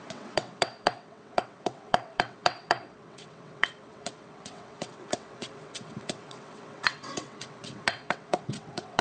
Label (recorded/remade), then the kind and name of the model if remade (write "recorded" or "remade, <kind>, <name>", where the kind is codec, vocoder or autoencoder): remade, vocoder, WaveNeXt